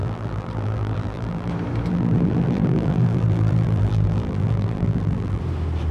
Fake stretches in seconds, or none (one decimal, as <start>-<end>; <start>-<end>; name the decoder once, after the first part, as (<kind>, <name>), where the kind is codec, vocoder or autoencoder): 0.0-1.5 (vocoder, BigVGAN v2); 1.9-5.4